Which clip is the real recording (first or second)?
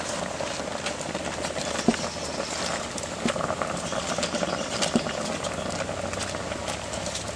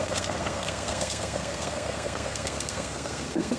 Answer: first